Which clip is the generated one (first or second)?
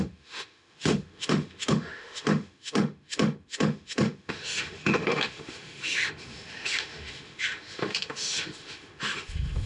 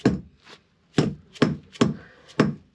first